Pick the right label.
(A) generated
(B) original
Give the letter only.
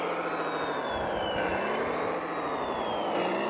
B